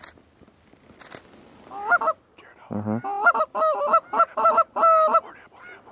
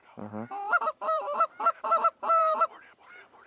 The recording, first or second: first